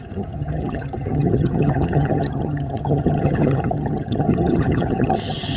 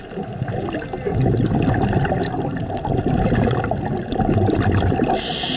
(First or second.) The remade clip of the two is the first